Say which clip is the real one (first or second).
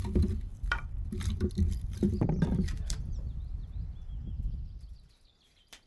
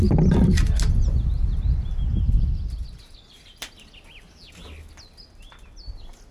second